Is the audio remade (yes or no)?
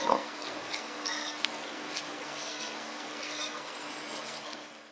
yes